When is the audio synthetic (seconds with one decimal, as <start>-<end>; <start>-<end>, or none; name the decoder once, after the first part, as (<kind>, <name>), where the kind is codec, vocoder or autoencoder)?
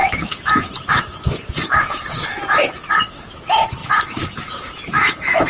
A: 0.0-5.5 (autoencoder, DAC-VAE)